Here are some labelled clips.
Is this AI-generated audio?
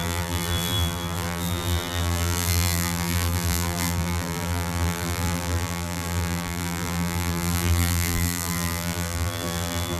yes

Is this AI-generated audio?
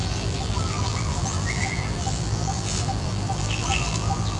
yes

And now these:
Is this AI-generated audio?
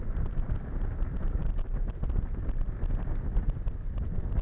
yes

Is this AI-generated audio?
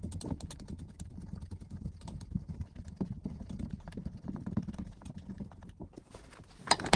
yes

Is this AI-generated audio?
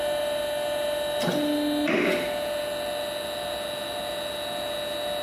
no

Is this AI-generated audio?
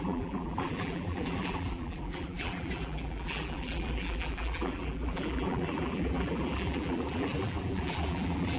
yes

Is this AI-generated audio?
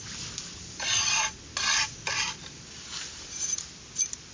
no